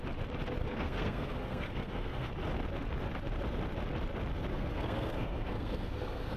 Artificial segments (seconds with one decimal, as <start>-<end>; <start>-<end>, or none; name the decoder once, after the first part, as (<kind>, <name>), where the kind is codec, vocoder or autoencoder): 0.6-2.3 (codec, SNAC); 4.5-6.4